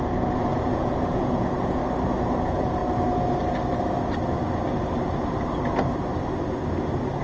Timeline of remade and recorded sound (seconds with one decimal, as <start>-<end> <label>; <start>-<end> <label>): 0.0-1.8 remade; 1.8-2.4 recorded; 2.4-2.8 remade; 2.8-7.2 recorded